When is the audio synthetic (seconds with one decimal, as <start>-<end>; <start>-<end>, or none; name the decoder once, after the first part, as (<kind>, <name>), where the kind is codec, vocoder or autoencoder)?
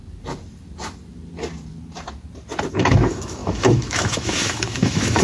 2.7-5.2 (autoencoder, DAC-VAE)